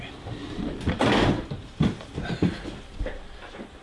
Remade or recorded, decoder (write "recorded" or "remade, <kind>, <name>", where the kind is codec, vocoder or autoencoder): remade, vocoder, BigVGAN v2